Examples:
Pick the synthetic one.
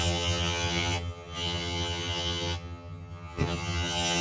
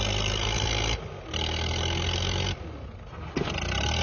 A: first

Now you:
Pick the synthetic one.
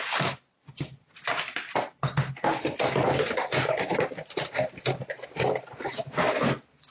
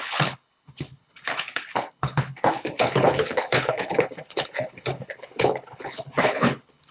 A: second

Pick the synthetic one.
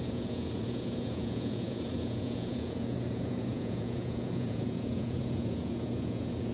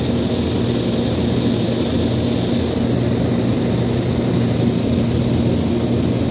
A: first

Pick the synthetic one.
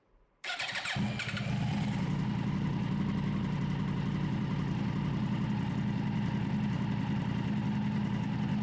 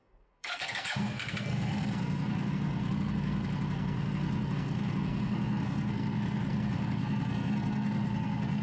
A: second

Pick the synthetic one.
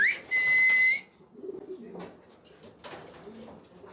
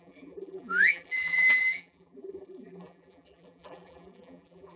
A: second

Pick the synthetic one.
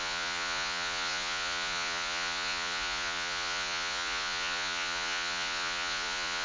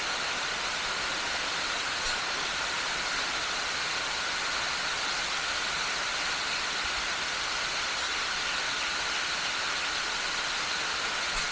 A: first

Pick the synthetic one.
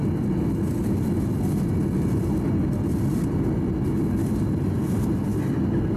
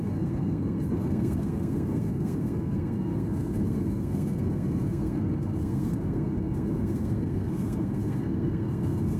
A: second